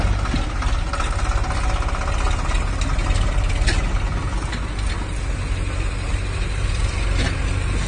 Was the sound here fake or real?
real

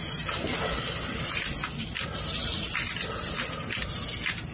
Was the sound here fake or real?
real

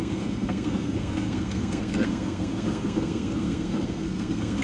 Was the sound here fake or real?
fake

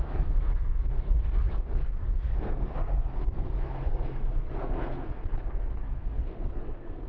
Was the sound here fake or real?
fake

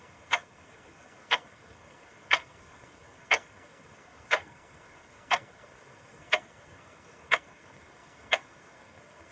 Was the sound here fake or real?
fake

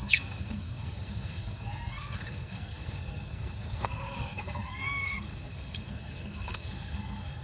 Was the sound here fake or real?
fake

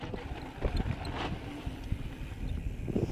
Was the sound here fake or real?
real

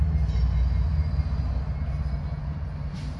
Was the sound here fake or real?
real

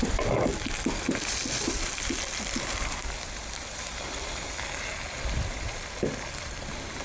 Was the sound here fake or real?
real